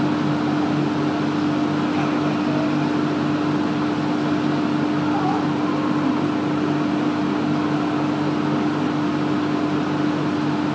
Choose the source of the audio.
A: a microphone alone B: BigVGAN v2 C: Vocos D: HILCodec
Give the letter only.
A